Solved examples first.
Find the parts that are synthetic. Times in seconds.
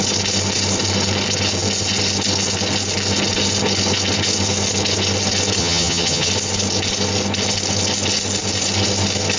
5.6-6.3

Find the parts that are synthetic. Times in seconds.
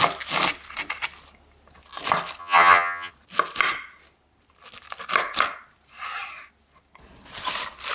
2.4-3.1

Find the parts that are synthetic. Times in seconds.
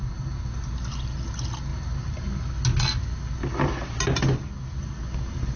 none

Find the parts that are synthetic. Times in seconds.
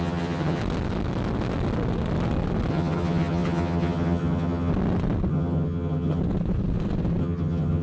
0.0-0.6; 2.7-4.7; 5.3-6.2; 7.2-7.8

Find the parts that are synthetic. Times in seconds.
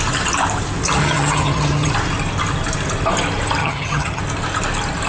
1.0-1.9; 3.6-4.2